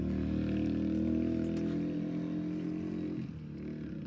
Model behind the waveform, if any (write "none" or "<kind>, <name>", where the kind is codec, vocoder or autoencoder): none